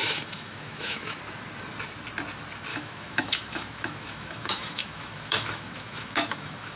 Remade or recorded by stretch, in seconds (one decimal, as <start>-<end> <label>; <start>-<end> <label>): 0.0-1.2 remade; 1.2-2.7 recorded; 2.7-6.8 remade